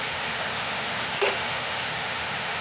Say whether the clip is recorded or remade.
remade